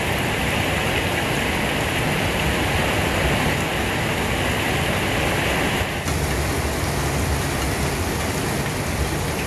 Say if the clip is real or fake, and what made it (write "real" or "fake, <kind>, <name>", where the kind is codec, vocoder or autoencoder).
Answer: real